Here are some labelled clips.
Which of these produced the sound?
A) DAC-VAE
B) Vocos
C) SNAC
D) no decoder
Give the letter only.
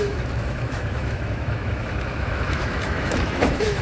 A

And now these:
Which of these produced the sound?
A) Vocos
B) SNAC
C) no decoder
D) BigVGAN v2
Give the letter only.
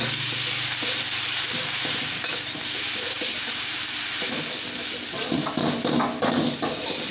C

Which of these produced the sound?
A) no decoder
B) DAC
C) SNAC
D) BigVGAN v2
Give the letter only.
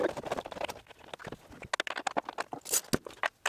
A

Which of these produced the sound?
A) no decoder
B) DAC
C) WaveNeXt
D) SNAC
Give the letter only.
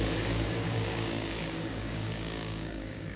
B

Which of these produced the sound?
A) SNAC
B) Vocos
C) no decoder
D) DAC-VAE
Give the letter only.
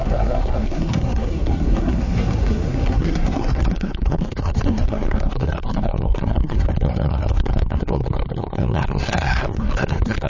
A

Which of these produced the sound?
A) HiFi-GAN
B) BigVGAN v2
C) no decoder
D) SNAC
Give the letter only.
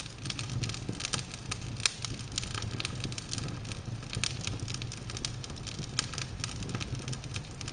C